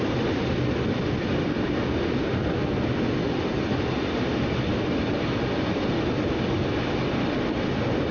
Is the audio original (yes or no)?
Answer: yes